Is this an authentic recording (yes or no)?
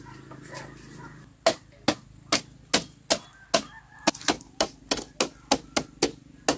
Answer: yes